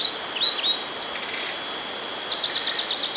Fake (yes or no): no